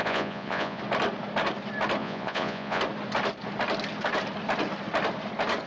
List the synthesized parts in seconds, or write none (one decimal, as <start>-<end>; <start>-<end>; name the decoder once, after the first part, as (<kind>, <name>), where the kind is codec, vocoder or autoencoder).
0.0-0.8 (vocoder, Vocos); 2.0-2.8